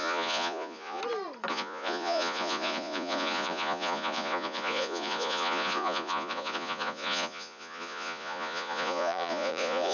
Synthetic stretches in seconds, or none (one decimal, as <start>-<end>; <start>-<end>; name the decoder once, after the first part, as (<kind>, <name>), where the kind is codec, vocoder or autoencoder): 0.0-1.0 (vocoder, Vocos); 1.5-9.9